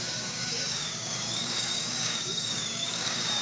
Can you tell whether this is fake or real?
fake